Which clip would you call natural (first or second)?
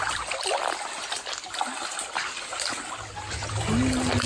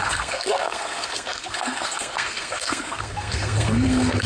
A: first